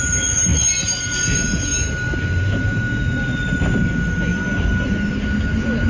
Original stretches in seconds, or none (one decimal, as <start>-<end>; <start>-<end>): 0.0-5.9